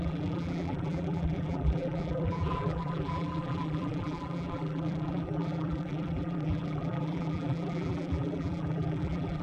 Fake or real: fake